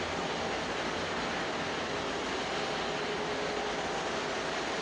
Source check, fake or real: real